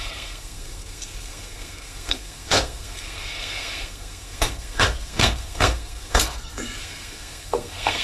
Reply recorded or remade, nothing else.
remade